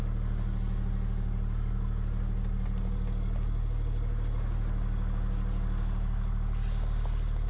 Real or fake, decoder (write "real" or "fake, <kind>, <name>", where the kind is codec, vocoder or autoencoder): real